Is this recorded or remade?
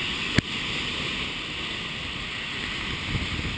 recorded